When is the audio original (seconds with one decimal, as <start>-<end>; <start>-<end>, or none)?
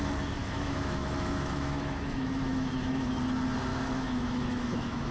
0.0-0.4; 3.2-3.7